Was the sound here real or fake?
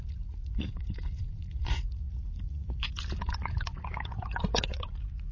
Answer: fake